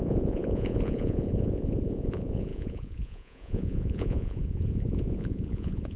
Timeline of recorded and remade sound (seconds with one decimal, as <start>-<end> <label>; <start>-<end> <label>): 0.0-6.0 remade